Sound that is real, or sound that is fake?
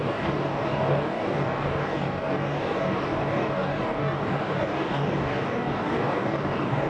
fake